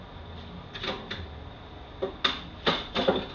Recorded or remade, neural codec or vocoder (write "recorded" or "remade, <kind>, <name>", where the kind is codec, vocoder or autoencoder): recorded